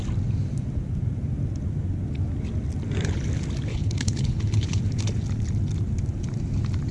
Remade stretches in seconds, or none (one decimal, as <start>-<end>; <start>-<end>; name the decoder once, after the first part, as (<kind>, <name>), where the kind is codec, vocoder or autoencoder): 3.7-4.8 (codec, HILCodec)